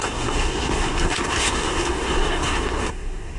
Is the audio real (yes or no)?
no